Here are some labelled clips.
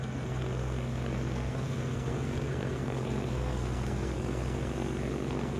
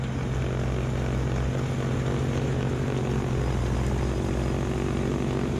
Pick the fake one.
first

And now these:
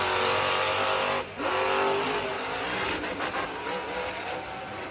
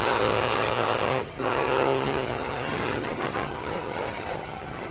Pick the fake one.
second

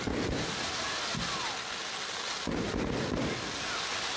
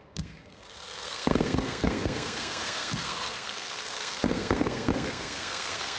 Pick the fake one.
second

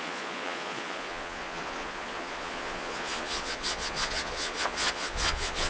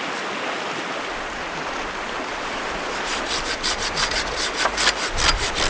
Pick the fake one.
first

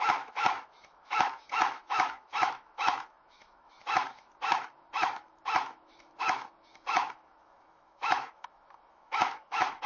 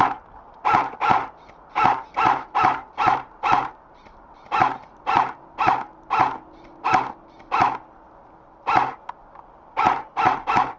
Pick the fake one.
first